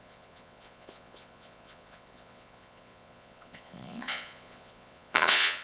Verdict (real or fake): fake